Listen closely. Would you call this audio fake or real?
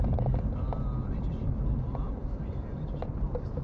real